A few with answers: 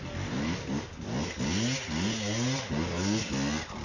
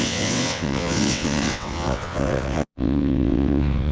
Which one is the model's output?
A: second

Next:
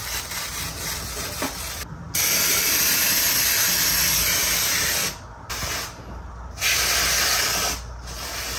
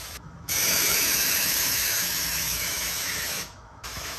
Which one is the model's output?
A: second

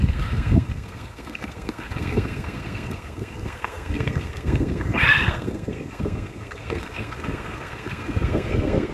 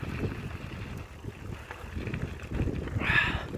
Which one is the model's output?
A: first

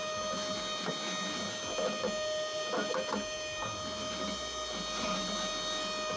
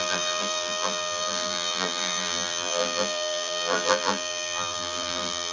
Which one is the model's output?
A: second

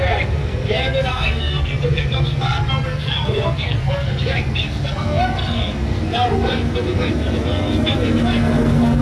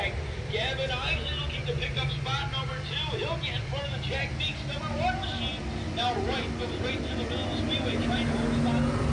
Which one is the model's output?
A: first